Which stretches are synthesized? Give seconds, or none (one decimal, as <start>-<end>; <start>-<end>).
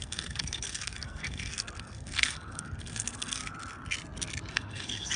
0.0-3.4; 4.5-5.2